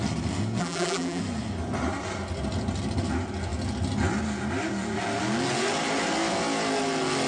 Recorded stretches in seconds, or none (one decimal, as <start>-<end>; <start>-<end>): 0.0-0.6; 1.2-7.3